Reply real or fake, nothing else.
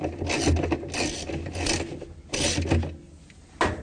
real